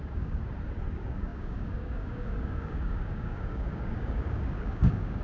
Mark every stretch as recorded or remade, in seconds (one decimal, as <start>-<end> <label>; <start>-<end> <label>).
0.0-0.4 remade; 0.4-0.9 recorded; 0.9-5.2 remade